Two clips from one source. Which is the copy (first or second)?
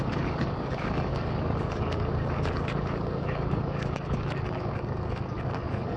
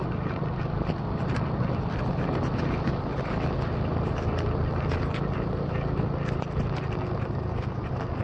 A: first